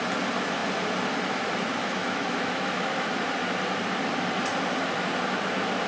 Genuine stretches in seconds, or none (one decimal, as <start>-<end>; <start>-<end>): 0.0-1.8; 3.1-5.9